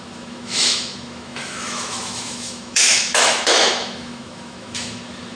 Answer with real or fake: fake